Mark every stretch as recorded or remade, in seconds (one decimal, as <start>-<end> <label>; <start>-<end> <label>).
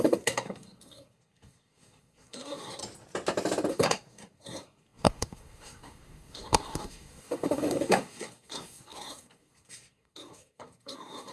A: 0.0-2.8 remade; 2.8-3.7 recorded; 3.7-11.3 remade